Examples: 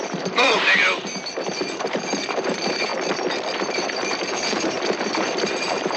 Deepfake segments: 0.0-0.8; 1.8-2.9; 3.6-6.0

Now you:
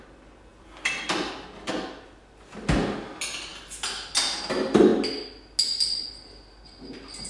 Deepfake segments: 0.5-1.7